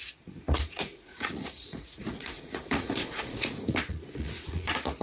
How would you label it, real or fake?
fake